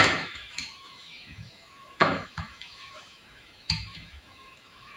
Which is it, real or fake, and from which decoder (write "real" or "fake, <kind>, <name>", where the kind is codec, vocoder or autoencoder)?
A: fake, autoencoder, DAC-VAE